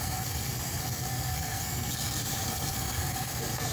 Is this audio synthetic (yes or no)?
yes